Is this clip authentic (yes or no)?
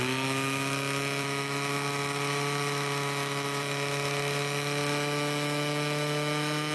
no